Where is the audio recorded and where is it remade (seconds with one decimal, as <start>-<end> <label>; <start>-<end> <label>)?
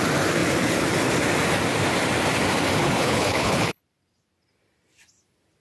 0.0-2.8 recorded; 2.8-3.8 remade; 3.8-5.6 recorded